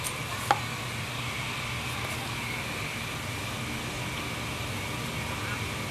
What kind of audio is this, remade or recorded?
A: recorded